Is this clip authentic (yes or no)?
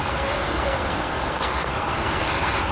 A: no